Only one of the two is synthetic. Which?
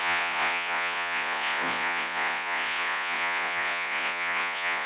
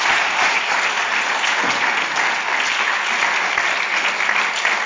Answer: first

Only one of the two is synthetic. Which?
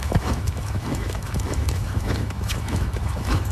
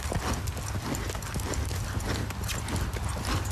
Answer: first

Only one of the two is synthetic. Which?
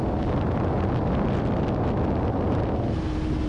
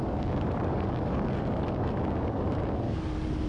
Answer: second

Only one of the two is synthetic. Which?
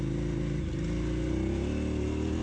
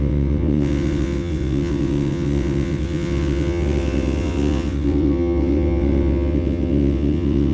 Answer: second